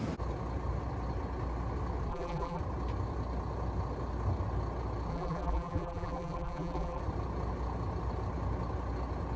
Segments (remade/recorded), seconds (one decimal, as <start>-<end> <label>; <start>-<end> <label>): 0.0-2.1 recorded; 2.1-2.6 remade; 2.6-5.1 recorded; 5.1-7.0 remade; 7.0-9.4 recorded